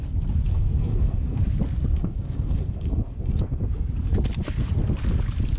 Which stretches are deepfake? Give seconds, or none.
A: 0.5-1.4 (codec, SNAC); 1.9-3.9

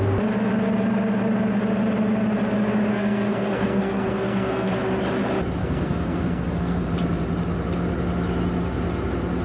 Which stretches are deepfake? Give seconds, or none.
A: 2.9-4.7 (codec, SNAC); 5.6-6.9

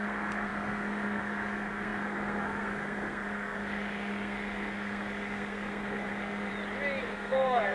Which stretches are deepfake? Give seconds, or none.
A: 0.0-6.5 (codec, SNAC); 7.0-7.7

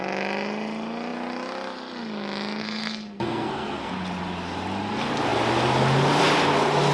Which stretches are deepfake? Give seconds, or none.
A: 2.6-3.9 (codec, SNAC)